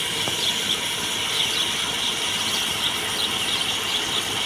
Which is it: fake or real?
fake